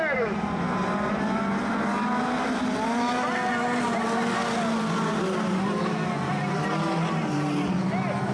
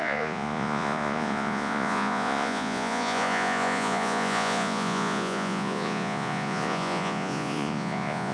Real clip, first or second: first